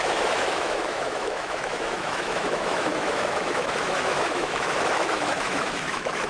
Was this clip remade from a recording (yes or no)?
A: yes